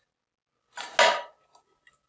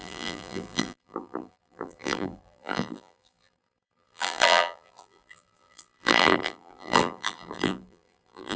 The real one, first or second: first